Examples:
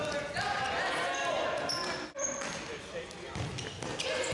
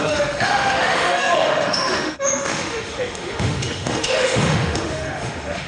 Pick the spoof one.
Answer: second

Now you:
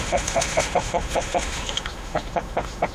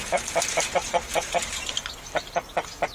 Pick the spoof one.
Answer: first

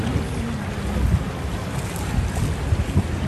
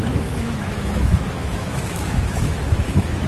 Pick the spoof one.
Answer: second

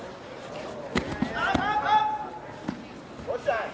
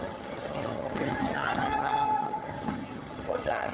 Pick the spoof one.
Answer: second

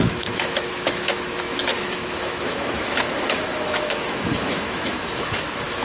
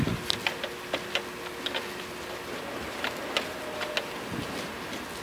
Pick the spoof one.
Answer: first